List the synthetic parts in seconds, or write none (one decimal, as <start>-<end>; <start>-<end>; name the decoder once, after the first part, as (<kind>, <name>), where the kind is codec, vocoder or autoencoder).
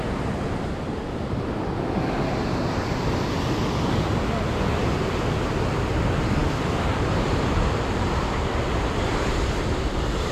none